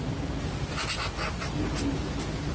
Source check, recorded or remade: recorded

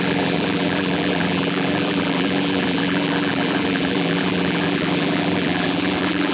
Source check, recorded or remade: remade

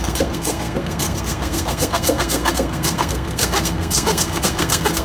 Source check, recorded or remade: remade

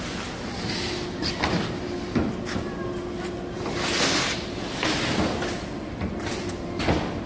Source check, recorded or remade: recorded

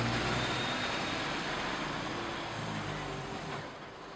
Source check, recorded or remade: recorded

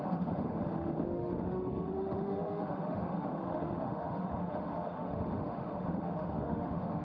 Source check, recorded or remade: remade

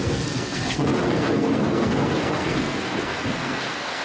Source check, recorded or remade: remade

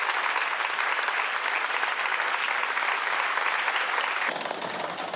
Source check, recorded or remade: recorded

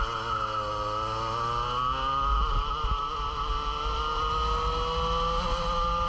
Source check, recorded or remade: recorded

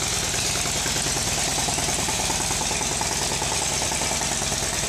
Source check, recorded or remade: recorded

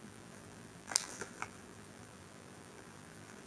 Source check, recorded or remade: remade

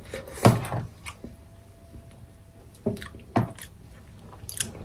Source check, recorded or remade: recorded